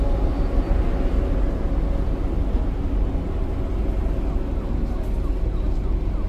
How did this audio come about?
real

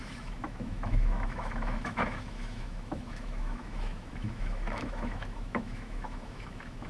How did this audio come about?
fake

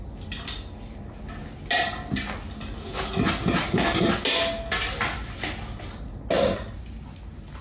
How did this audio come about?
real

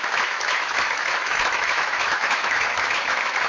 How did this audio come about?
fake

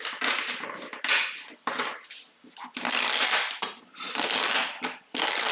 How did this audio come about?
real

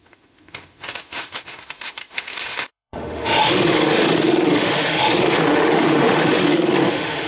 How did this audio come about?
fake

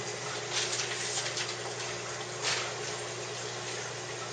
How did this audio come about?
real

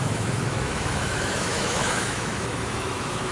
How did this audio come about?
fake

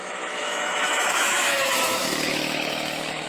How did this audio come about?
fake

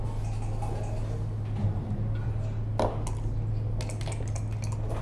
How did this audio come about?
real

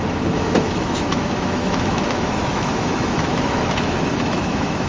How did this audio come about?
fake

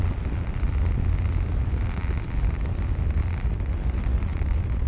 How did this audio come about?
real